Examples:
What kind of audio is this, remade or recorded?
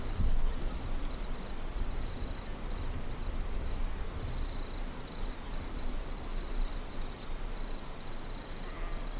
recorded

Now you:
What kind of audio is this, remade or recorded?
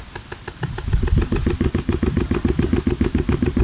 remade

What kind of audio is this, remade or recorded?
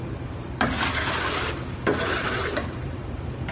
remade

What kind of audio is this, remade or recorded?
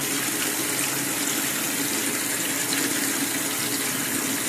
recorded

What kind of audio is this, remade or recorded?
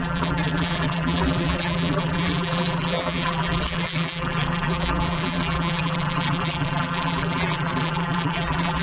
remade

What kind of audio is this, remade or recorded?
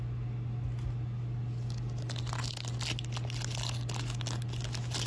recorded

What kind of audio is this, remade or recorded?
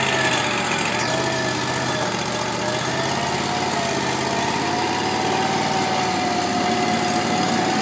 recorded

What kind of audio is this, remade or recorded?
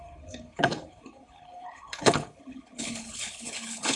remade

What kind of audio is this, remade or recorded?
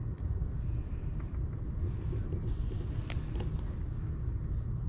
recorded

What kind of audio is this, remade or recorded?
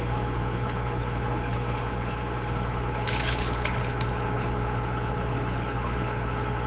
remade